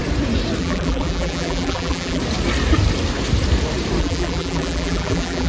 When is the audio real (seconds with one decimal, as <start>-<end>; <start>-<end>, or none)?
0.0-0.6; 2.2-4.0